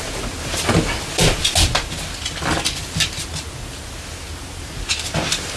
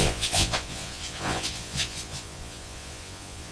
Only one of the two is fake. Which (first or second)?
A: second